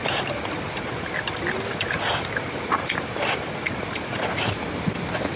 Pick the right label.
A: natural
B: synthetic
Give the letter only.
A